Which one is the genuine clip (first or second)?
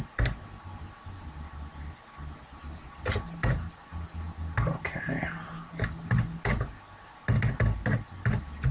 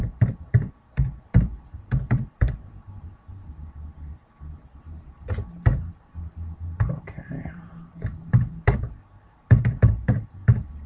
first